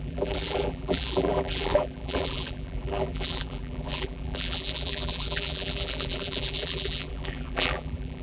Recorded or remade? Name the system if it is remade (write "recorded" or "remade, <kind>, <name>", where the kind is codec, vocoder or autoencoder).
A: remade, vocoder, BigVGAN v2